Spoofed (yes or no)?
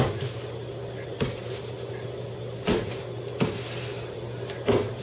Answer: no